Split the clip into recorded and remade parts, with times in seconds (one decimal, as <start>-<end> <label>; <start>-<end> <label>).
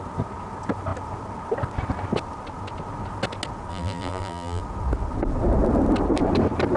0.0-3.7 recorded; 3.7-4.6 remade; 4.6-6.8 recorded